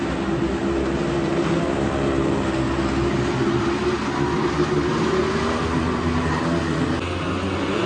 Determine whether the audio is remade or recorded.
recorded